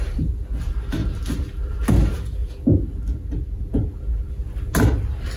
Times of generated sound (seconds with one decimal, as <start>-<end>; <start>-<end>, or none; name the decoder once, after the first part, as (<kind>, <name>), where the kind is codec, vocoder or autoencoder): none